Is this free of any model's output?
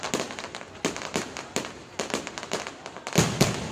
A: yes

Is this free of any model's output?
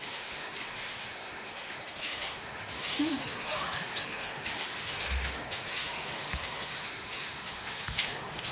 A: no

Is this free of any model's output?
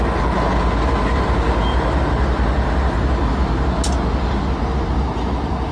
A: yes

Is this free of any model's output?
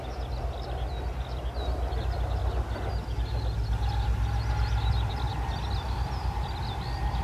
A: yes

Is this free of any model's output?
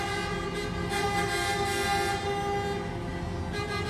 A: yes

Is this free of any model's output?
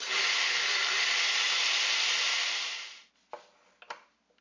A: yes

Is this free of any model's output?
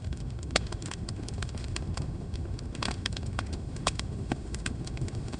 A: no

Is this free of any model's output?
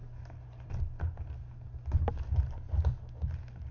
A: yes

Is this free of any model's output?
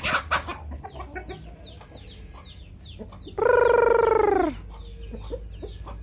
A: yes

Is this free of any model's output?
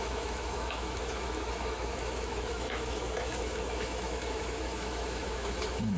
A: no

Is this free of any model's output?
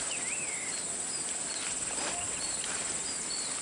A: yes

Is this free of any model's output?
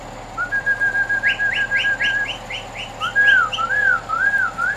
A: yes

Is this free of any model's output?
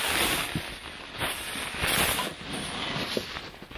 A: yes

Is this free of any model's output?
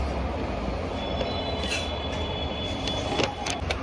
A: yes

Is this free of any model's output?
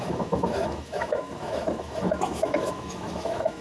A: no